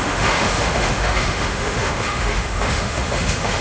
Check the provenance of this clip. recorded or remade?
remade